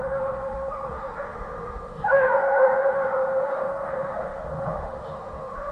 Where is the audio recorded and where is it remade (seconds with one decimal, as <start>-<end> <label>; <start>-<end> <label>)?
0.0-5.7 remade

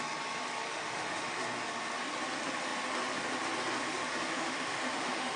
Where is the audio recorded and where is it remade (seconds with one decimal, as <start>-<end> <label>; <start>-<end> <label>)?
0.0-0.7 recorded; 0.7-1.4 remade; 1.4-3.8 recorded; 3.8-5.4 remade

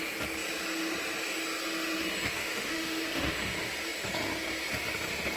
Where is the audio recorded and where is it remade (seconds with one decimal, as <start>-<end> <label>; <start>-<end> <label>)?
0.0-2.4 recorded; 2.4-3.3 remade; 3.3-5.4 recorded

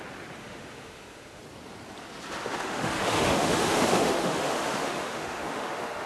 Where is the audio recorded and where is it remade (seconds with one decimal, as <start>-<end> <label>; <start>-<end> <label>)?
0.0-0.4 recorded; 0.4-1.4 remade; 1.4-2.4 recorded; 2.4-6.1 remade

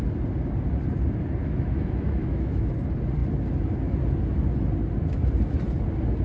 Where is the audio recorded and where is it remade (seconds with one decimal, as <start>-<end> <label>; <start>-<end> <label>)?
0.0-1.4 recorded; 1.4-2.7 remade; 2.7-6.2 recorded

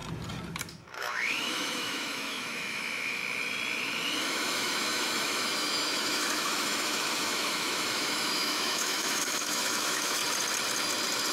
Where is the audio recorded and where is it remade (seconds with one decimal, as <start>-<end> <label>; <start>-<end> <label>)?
0.0-0.7 recorded; 0.7-3.2 remade; 3.2-4.2 recorded; 4.2-10.2 remade; 10.2-11.3 recorded

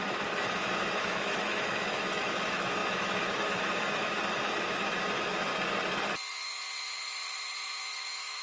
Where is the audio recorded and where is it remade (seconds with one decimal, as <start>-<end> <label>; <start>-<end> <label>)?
0.0-5.5 remade; 5.5-6.3 recorded; 6.3-8.4 remade